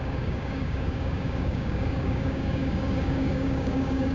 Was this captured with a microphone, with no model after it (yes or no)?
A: no